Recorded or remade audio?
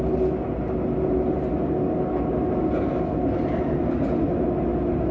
recorded